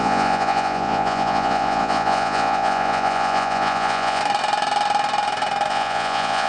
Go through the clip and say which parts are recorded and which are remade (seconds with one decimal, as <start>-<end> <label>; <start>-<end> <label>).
0.0-4.2 remade; 4.2-5.7 recorded; 5.7-6.5 remade